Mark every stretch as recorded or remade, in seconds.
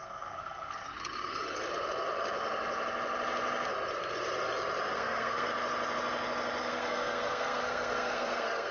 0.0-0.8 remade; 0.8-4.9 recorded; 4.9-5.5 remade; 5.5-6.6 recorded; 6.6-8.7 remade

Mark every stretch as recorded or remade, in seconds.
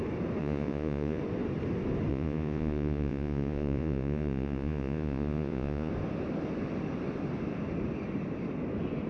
0.0-0.4 recorded; 0.4-1.2 remade; 1.2-2.1 recorded; 2.1-5.9 remade; 5.9-9.1 recorded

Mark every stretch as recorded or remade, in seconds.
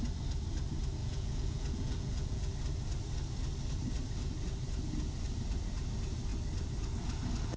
0.0-1.0 recorded; 1.0-2.5 remade; 2.5-7.6 recorded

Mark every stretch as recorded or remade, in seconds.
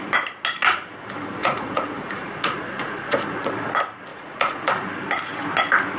0.0-1.4 recorded; 1.4-3.5 remade; 3.5-4.1 recorded; 4.1-4.6 remade; 4.6-6.0 recorded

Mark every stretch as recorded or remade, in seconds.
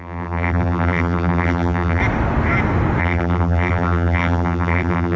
0.0-2.0 remade; 2.0-3.0 recorded; 3.0-5.2 remade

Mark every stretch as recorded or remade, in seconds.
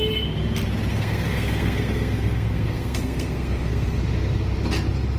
0.0-0.9 recorded; 0.9-4.0 remade; 4.0-5.2 recorded